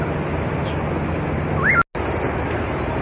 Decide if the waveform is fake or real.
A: real